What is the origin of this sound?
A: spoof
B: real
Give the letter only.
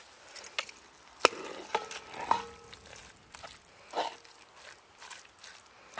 B